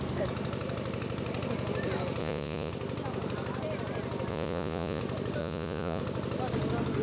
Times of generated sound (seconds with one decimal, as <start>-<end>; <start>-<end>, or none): 2.2-2.7; 4.3-5.0; 5.4-6.0